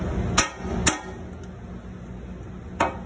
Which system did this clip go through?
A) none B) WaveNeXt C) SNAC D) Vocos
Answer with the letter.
A